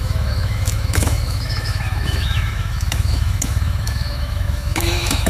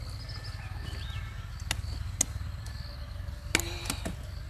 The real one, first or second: second